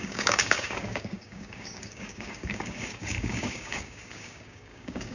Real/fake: fake